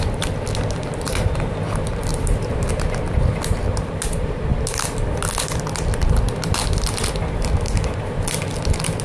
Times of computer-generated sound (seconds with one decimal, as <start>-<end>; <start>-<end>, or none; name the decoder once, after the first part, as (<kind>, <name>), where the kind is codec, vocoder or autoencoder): 2.1-2.7 (vocoder, BigVGAN v2)